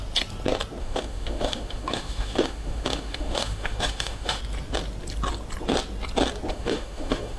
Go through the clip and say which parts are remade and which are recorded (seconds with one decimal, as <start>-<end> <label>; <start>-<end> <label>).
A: 0.0-0.8 recorded; 0.8-4.4 remade; 4.4-6.5 recorded; 6.5-7.4 remade